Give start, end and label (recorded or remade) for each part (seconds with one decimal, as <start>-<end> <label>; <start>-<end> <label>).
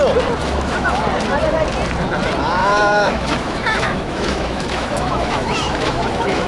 0.0-0.4 recorded; 0.4-1.0 remade; 1.0-2.6 recorded; 2.6-6.5 remade